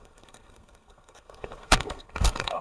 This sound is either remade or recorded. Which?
remade